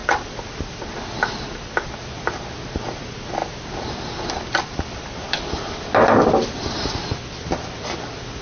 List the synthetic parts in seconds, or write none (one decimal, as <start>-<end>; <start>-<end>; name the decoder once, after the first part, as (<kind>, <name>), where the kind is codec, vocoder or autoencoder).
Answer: none